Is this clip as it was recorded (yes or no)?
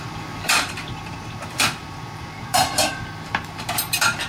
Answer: no